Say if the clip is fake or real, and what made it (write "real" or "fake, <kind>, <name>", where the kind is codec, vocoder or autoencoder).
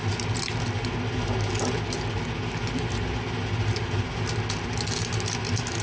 real